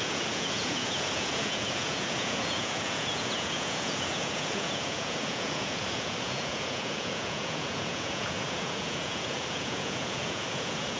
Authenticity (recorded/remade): remade